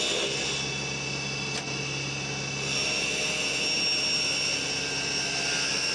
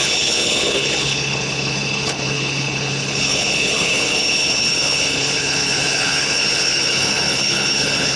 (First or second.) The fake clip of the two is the second